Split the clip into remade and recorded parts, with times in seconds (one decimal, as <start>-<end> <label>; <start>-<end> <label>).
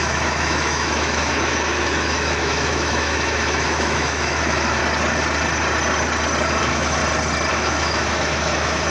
0.0-4.8 remade; 4.8-6.6 recorded; 6.6-7.0 remade; 7.0-7.5 recorded; 7.5-8.9 remade